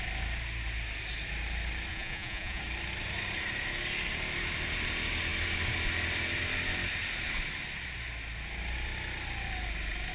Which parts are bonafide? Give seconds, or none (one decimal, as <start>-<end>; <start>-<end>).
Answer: 0.0-1.9; 2.6-10.1